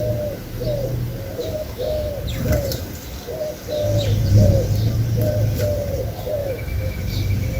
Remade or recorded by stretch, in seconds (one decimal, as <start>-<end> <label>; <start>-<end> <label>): 0.0-1.4 recorded; 1.4-2.1 remade; 2.1-6.4 recorded; 6.4-7.0 remade; 7.0-7.6 recorded

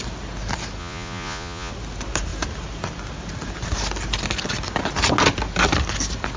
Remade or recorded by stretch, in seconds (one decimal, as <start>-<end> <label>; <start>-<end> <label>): 0.0-0.8 recorded; 0.8-1.7 remade; 1.7-6.4 recorded

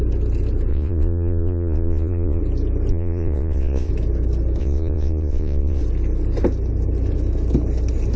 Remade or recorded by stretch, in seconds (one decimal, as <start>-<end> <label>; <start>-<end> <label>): 0.0-0.7 recorded; 0.7-2.4 remade; 2.4-2.9 recorded; 2.9-3.9 remade; 3.9-4.6 recorded; 4.6-5.8 remade; 5.8-8.2 recorded

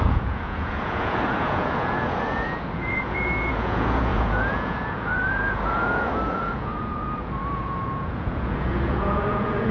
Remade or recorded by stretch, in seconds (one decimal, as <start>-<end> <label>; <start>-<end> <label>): 0.0-9.7 remade